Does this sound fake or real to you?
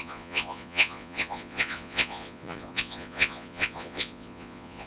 fake